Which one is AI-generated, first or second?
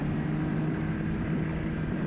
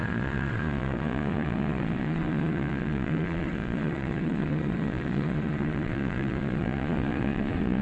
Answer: second